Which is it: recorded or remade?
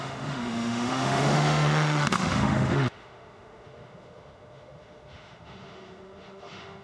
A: remade